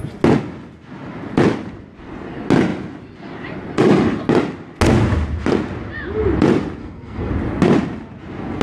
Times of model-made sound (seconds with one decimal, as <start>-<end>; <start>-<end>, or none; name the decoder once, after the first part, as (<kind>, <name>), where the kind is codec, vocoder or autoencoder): 6.8-7.3 (codec, SNAC)